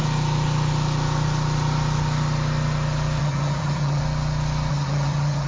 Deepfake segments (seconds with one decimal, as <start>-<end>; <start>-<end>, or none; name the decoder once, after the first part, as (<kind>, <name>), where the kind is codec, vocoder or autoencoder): 3.2-4.0 (vocoder, HiFi-GAN); 4.7-5.5